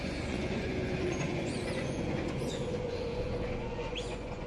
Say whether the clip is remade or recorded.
remade